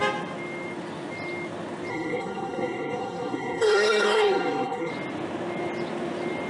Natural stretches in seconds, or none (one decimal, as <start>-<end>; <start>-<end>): 0.0-1.9; 4.9-6.5